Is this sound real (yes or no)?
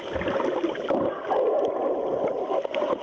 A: yes